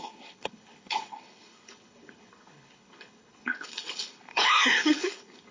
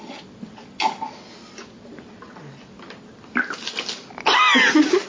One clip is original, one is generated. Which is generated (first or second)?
first